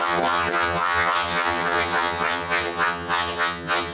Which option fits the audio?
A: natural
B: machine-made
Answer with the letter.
B